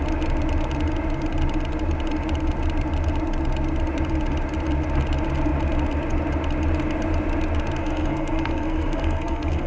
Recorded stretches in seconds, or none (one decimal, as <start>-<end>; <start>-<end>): 0.0-7.8